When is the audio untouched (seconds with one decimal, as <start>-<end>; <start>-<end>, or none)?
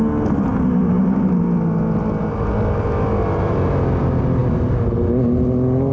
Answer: 0.0-5.9